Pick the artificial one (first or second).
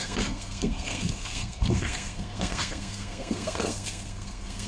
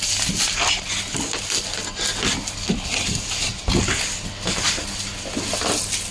first